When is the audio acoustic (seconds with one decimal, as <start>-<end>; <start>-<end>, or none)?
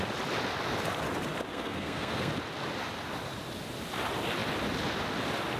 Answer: 0.0-1.5; 2.3-5.6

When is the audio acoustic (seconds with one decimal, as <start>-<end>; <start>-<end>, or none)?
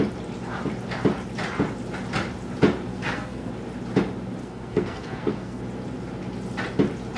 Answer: 0.0-2.9; 3.5-4.4; 5.6-7.2